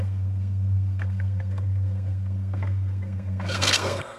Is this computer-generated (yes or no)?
yes